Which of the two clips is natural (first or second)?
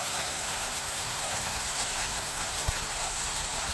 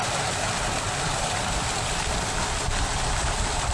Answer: second